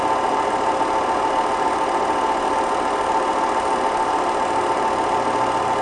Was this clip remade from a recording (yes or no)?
no